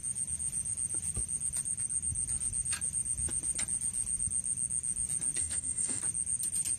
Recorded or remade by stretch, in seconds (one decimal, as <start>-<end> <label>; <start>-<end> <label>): 0.0-5.4 recorded; 5.4-6.0 remade; 6.0-6.8 recorded